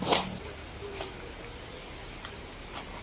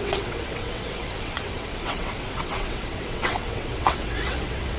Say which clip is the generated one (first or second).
second